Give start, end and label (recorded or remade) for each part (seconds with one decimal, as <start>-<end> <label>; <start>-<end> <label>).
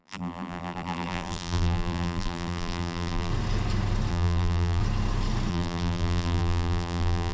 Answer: 0.0-3.3 remade; 3.3-4.1 recorded; 4.1-4.8 remade; 4.8-5.5 recorded; 5.5-7.3 remade